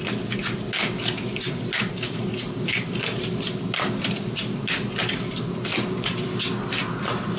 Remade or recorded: recorded